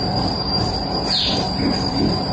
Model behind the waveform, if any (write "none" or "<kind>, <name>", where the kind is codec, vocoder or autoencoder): vocoder, BigVGAN v2